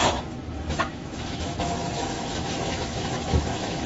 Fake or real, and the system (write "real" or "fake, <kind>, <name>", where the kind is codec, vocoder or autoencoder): fake, autoencoder, DAC-VAE